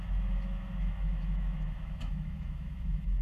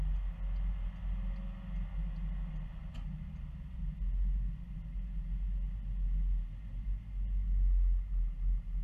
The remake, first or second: first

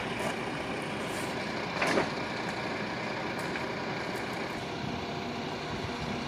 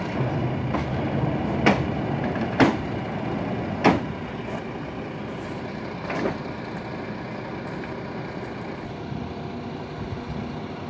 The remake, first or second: first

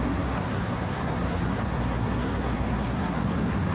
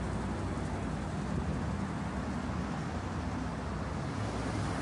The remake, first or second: first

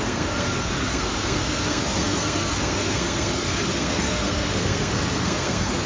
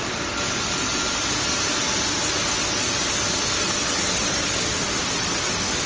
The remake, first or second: first